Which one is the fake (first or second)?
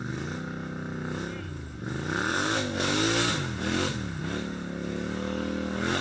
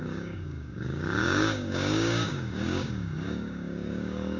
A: second